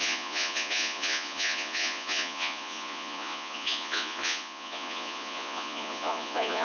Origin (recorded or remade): remade